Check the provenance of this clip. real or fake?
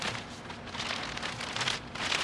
real